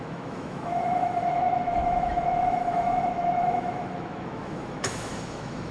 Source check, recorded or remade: remade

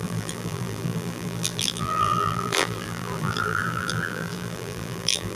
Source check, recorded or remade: remade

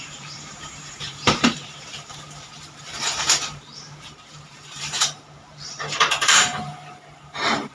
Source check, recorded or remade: remade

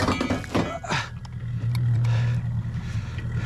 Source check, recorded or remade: recorded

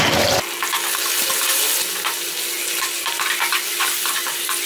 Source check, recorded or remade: recorded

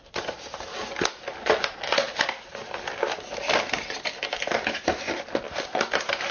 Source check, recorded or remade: recorded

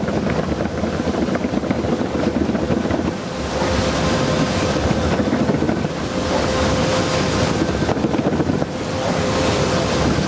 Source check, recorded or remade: recorded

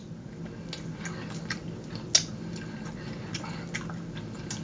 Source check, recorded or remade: recorded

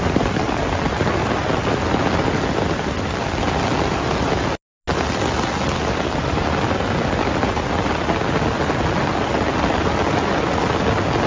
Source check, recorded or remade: recorded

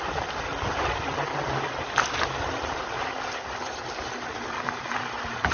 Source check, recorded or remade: remade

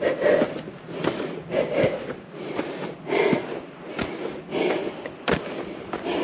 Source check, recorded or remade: recorded